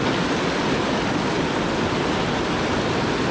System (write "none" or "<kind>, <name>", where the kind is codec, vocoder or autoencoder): none